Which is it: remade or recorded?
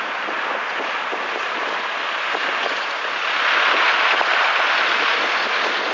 recorded